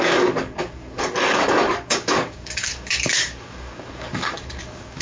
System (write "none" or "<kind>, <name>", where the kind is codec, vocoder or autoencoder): codec, DAC